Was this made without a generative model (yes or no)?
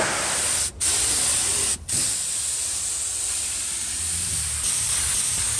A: yes